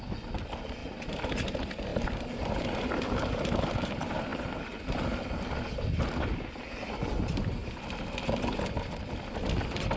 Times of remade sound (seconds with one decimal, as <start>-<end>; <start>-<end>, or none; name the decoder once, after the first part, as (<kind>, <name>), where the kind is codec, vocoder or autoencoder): none